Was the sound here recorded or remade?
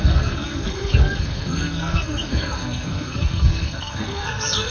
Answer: remade